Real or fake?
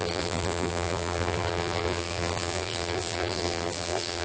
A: fake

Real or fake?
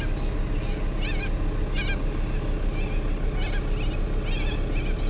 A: real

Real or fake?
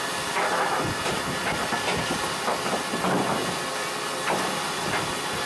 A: real